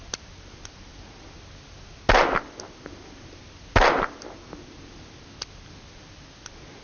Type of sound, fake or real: real